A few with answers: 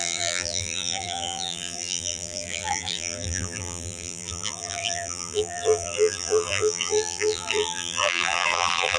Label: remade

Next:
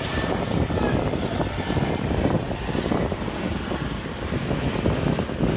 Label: recorded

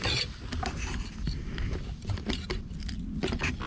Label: recorded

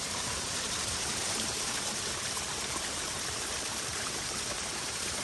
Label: remade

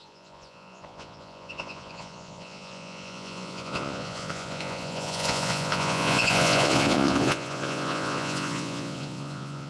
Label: remade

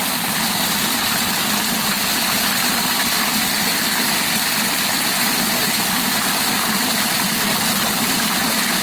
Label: recorded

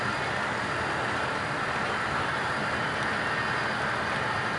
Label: recorded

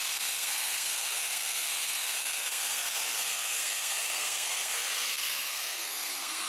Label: remade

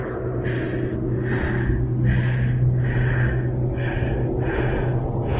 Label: recorded